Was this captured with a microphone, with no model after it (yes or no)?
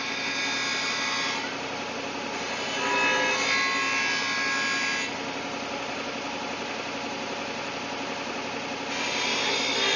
yes